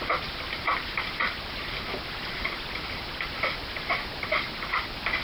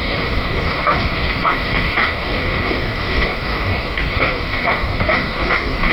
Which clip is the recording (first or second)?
first